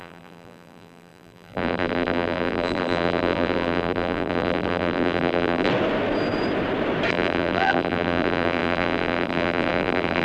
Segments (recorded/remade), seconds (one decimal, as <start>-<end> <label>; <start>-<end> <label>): 0.0-5.7 remade; 5.7-7.1 recorded; 7.1-10.2 remade

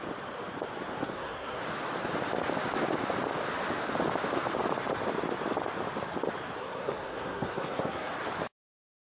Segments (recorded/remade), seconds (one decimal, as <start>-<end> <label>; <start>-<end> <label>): 0.0-0.9 recorded; 0.9-1.6 remade; 1.6-6.6 recorded; 6.6-8.1 remade; 8.1-9.1 recorded